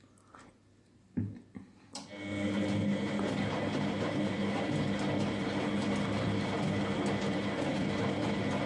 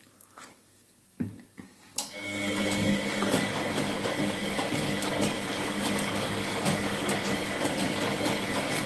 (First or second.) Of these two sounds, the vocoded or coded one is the second